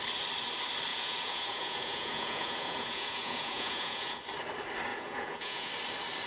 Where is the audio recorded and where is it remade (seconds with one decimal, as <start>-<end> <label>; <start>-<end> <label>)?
0.0-0.9 recorded; 0.9-4.2 remade; 4.2-4.9 recorded; 4.9-5.7 remade; 5.7-6.3 recorded